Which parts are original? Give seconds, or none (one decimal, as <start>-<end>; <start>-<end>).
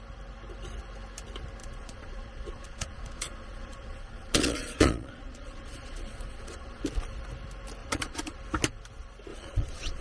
0.0-1.6; 6.8-7.8; 8.4-9.3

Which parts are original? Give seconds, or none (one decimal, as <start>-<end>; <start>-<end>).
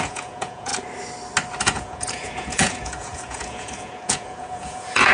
0.7-1.6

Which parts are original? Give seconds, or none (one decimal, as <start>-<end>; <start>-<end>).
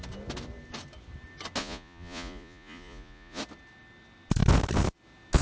0.0-1.6; 3.4-5.4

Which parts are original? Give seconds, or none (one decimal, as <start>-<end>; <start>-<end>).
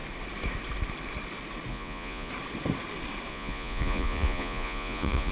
0.0-1.7; 2.3-3.3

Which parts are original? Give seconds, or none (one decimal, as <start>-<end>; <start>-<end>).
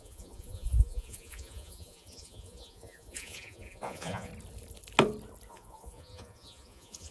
4.3-5.5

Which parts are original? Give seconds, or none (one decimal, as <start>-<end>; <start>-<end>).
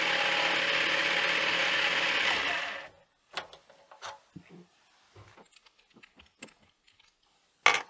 0.0-7.9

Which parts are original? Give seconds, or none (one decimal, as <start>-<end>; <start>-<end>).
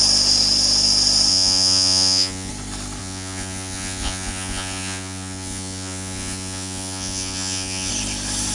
0.0-1.3; 2.5-3.0; 7.9-8.5